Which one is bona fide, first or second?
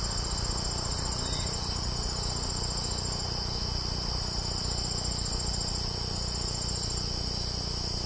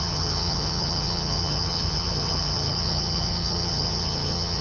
first